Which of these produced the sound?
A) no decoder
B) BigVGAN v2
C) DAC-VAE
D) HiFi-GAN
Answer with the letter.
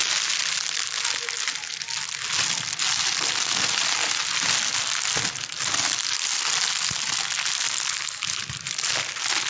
A